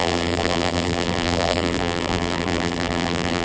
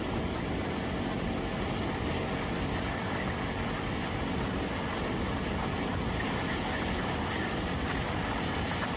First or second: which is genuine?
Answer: second